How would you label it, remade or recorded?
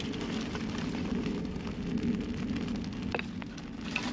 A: recorded